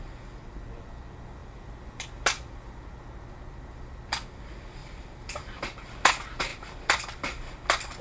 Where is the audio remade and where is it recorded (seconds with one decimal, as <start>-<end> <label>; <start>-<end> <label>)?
0.0-1.4 recorded; 1.4-2.8 remade; 2.8-4.8 recorded; 4.8-5.6 remade; 5.6-6.5 recorded; 6.5-7.2 remade; 7.2-8.0 recorded

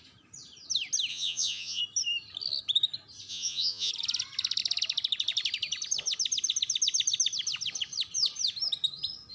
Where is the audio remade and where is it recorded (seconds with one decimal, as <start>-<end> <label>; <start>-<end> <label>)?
0.0-1.1 recorded; 1.1-1.8 remade; 1.8-3.3 recorded; 3.3-3.9 remade; 3.9-9.3 recorded

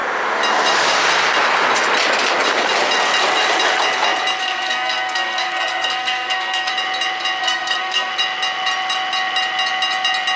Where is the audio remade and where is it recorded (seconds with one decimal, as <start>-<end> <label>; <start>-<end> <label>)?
0.0-4.4 recorded; 4.4-6.7 remade; 6.7-7.4 recorded; 7.4-8.1 remade; 8.1-10.4 recorded

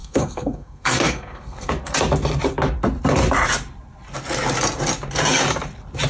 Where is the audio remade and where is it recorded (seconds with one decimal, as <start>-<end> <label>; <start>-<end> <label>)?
0.0-1.7 remade; 1.7-6.1 recorded